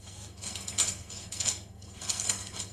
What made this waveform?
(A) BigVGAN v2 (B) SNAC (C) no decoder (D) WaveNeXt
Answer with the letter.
B